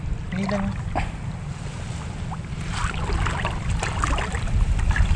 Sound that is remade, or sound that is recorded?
recorded